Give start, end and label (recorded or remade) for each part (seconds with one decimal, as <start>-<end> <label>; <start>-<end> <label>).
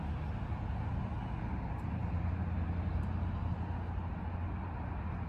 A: 0.0-5.3 recorded